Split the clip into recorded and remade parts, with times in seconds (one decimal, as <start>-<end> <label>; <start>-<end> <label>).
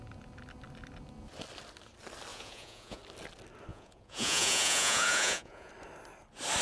0.0-2.3 recorded; 2.3-3.0 remade; 3.0-3.7 recorded; 3.7-5.7 remade; 5.7-6.6 recorded